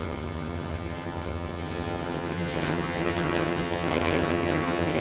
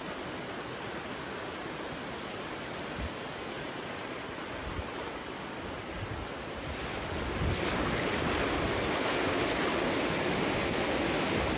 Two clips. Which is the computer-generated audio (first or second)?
first